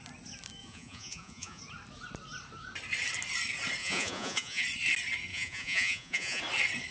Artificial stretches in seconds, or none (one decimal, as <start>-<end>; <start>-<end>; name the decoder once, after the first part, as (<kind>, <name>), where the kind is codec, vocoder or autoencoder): 0.6-1.6 (vocoder, Vocos); 3.8-4.6; 5.3-6.4